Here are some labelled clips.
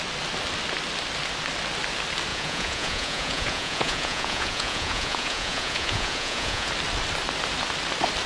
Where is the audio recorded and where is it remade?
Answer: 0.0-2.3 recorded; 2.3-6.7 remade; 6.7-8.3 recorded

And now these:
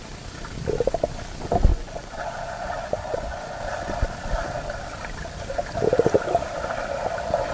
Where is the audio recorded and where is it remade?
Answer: 0.0-1.7 recorded; 1.7-3.6 remade; 3.6-7.5 recorded